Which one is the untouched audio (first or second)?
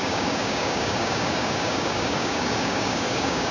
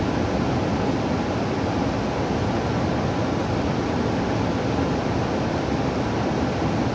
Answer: second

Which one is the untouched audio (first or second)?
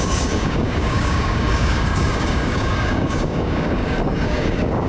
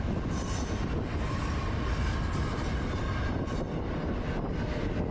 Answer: second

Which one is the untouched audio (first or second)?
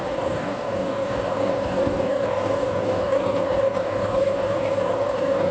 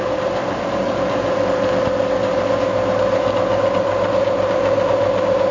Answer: second